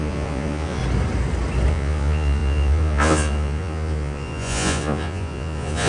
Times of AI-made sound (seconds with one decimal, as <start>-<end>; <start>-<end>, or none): 0.0-0.8; 1.7-5.9